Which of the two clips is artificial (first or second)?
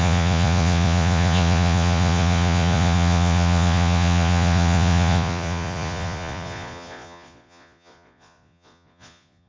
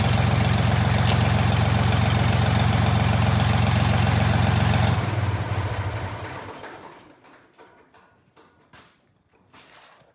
first